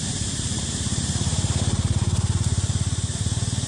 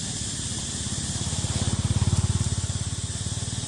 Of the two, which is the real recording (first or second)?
second